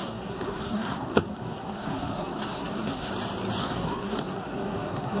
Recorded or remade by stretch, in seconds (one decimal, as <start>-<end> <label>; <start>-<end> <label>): 0.0-3.1 remade; 3.1-3.6 recorded; 3.6-5.2 remade